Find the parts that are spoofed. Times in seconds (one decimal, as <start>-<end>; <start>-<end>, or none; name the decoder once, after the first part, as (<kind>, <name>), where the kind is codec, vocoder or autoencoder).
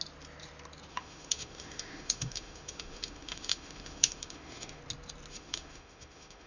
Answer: 0.9-4.8 (autoencoder, DAC-VAE); 5.3-6.5